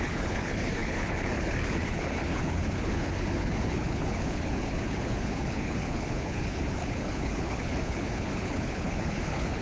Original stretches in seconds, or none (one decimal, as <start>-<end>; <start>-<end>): none